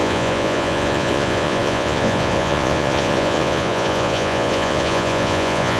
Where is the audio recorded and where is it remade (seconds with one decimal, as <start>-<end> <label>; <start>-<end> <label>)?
0.0-5.8 remade